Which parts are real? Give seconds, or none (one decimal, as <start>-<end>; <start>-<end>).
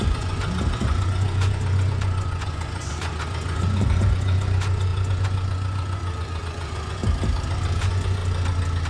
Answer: 7.0-7.8; 8.2-8.9